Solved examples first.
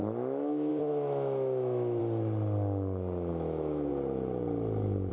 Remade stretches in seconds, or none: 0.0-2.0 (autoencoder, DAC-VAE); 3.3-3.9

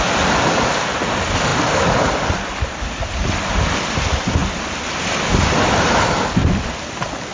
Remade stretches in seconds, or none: none

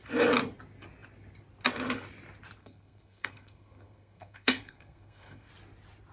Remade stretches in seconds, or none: 2.6-5.5 (codec, SNAC)